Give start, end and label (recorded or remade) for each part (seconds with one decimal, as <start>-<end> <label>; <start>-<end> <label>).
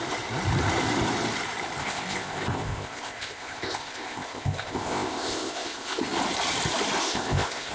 0.0-1.8 recorded; 1.8-6.0 remade; 6.0-7.0 recorded; 7.0-7.7 remade